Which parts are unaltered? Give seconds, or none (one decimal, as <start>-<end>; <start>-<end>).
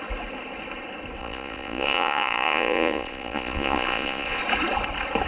0.0-1.2; 4.4-5.3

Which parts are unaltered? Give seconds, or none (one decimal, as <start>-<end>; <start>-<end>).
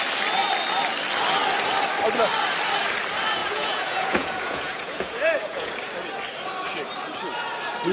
0.0-3.4; 5.7-7.9